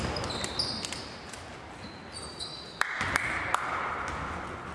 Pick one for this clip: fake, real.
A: real